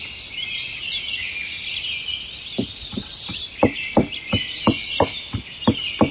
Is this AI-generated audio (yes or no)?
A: no